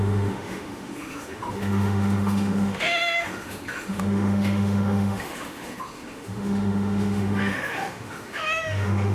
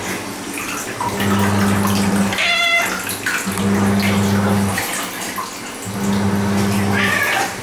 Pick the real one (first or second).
second